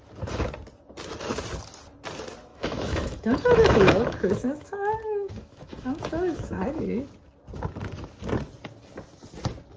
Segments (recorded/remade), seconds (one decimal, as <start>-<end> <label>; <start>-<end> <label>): 0.0-2.5 recorded; 2.5-7.1 remade; 7.1-9.8 recorded